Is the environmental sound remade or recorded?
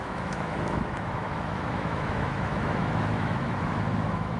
remade